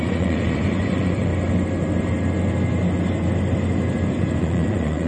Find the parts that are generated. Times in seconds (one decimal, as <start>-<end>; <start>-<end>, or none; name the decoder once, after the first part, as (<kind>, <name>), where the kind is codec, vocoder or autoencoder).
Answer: 0.0-1.3 (vocoder, Vocos); 4.4-5.1